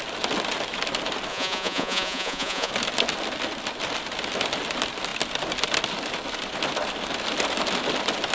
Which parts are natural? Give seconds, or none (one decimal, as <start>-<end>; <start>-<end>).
0.0-1.3; 2.7-8.3